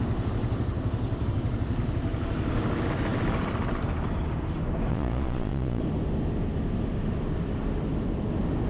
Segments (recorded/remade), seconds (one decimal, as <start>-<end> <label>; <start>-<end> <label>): 0.0-4.9 recorded; 4.9-5.8 remade; 5.8-8.7 recorded